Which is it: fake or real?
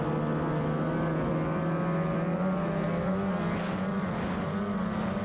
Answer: real